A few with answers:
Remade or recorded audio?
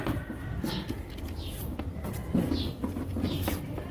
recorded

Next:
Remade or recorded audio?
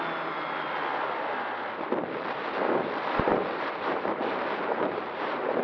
remade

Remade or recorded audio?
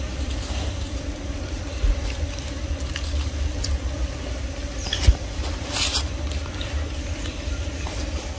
remade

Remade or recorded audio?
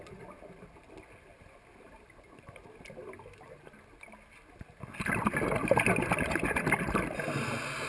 recorded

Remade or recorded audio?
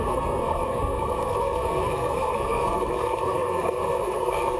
remade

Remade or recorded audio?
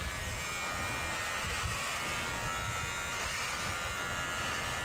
recorded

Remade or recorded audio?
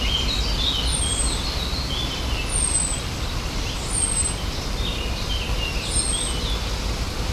recorded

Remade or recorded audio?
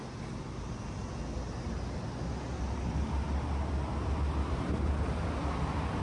recorded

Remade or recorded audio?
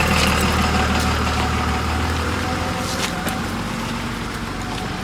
remade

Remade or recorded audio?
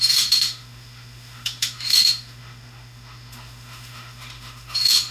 remade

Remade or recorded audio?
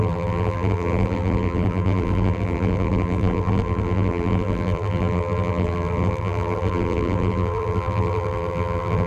remade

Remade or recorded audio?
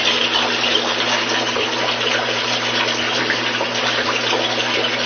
recorded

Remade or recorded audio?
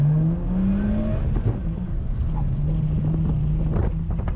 recorded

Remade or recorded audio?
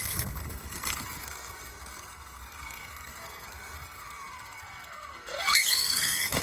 remade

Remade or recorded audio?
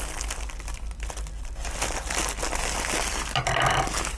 recorded